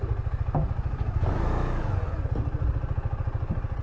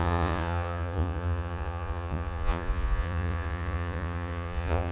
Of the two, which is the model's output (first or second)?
second